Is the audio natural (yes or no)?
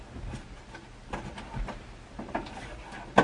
yes